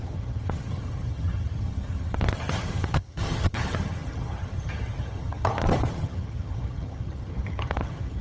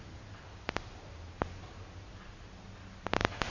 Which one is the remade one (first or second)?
first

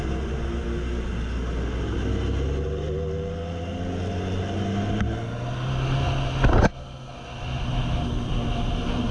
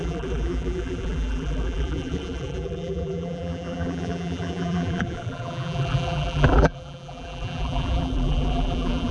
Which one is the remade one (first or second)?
second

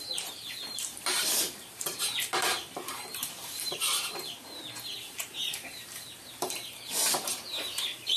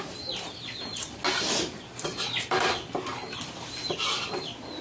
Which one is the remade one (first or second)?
first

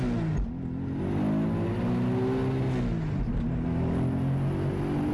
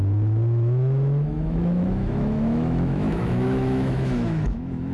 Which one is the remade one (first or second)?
second